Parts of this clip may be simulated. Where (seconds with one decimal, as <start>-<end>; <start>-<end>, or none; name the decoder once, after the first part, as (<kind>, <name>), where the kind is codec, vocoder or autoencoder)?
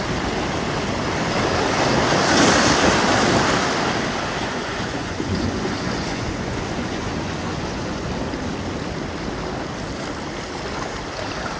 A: 4.4-8.1 (vocoder, Vocos)